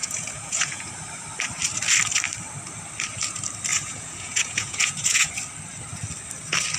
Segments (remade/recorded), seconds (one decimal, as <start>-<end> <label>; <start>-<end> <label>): 0.0-0.9 remade; 0.9-3.7 recorded; 3.7-5.3 remade; 5.3-6.8 recorded